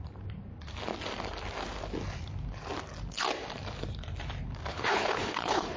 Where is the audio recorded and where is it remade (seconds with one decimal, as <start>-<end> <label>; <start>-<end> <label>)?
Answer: 0.0-4.7 recorded; 4.7-5.8 remade